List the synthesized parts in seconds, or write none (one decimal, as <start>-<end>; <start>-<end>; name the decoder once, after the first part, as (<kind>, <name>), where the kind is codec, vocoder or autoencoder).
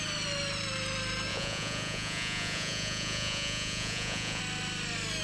1.3-4.4 (vocoder, Vocos)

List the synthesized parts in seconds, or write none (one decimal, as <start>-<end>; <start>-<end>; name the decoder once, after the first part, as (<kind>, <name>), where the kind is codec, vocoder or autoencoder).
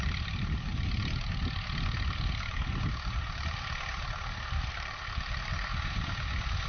0.0-0.7 (vocoder, BigVGAN v2); 4.7-5.7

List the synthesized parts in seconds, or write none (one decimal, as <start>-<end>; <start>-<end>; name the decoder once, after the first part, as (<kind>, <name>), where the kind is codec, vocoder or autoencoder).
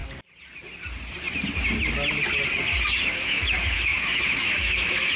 3.1-5.2 (autoencoder, DAC-VAE)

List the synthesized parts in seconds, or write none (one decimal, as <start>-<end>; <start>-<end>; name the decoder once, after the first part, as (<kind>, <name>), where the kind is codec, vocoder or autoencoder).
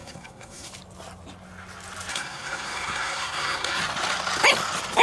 0.0-0.7 (codec, SNAC); 2.1-3.8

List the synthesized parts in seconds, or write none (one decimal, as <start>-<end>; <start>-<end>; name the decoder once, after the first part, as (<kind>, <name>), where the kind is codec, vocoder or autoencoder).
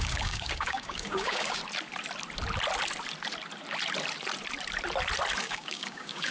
0.0-1.6 (codec, DAC); 5.4-6.3